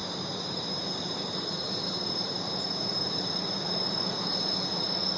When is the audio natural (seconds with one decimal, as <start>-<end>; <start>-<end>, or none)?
none